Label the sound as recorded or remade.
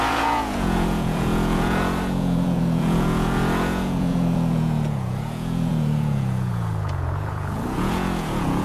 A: remade